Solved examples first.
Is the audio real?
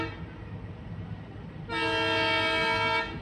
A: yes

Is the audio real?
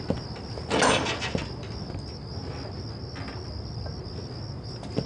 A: yes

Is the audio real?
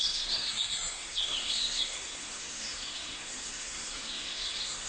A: no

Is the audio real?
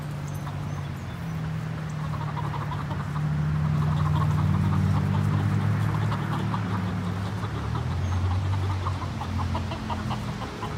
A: yes